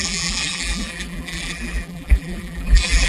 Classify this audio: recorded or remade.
remade